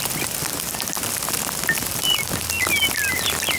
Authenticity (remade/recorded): recorded